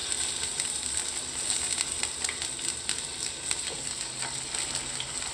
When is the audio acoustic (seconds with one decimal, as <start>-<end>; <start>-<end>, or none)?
0.0-5.3